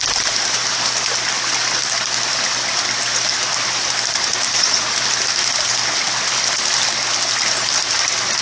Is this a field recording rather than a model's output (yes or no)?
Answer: yes